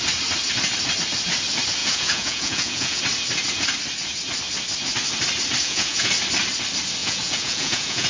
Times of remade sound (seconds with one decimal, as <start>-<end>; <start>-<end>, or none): 1.8-3.0; 5.6-6.1; 7.0-8.1